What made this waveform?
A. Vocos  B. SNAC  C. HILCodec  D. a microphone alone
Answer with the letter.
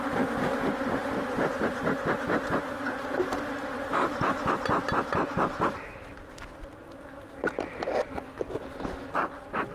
D